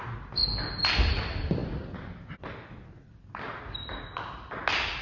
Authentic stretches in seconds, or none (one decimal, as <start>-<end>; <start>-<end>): 0.0-5.0